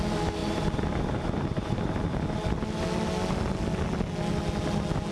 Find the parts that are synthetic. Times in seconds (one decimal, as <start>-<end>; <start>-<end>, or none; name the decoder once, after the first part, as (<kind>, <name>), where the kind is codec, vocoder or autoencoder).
0.4-2.0 (vocoder, BigVGAN v2)